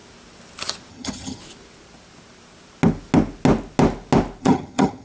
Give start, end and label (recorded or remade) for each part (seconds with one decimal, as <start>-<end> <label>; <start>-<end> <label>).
0.0-0.9 recorded; 0.9-1.4 remade; 1.4-4.4 recorded; 4.4-5.0 remade